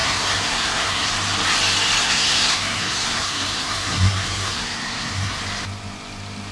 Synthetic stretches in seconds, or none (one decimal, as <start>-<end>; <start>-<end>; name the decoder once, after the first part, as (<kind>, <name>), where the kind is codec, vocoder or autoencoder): 0.0-1.1 (codec, SNAC); 2.0-5.4